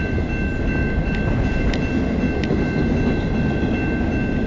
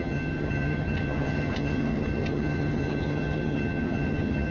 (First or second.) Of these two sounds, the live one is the first